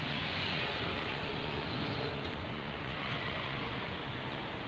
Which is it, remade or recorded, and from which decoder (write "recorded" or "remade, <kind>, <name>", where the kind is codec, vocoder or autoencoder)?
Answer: remade, vocoder, Vocos